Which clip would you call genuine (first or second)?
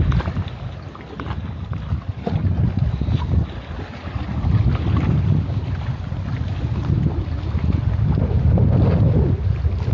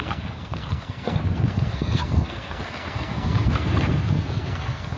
first